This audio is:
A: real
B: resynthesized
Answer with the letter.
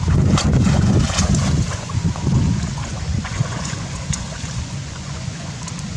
B